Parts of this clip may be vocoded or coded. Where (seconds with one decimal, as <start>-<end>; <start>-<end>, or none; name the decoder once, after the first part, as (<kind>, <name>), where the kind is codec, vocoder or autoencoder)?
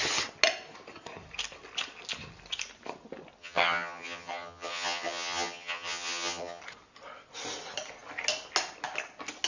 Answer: 3.4-6.6 (vocoder, HiFi-GAN)